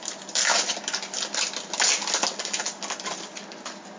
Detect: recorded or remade recorded